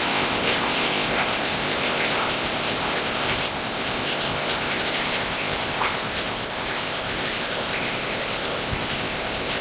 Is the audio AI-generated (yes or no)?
yes